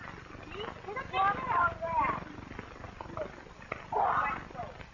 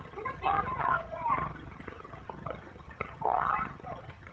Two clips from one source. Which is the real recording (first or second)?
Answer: first